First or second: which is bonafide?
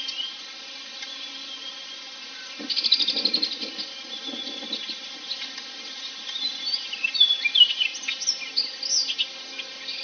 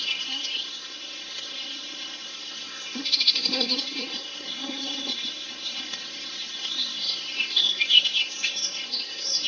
first